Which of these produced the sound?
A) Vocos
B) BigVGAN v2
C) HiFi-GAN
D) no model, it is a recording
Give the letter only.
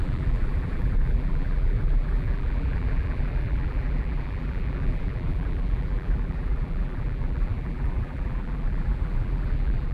B